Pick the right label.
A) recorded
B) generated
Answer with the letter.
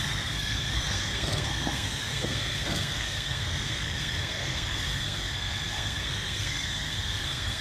B